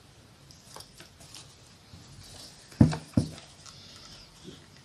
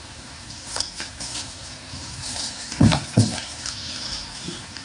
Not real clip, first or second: second